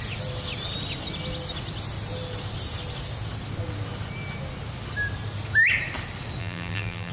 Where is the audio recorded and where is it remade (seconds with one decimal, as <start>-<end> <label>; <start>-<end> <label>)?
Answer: 0.0-6.4 recorded; 6.4-7.1 remade